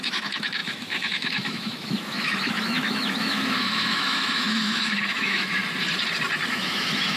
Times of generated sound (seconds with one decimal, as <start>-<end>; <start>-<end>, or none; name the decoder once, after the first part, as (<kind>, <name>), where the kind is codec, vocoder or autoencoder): 0.0-5.6 (autoencoder, DAC-VAE); 6.5-7.2